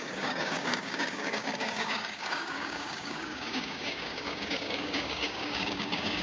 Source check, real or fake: fake